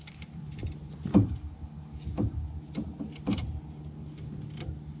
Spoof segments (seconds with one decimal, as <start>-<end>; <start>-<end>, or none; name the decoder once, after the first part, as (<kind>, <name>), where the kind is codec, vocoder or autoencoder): none